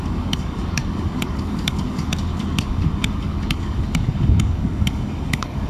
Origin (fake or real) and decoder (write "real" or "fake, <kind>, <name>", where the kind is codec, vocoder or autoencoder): fake, codec, DAC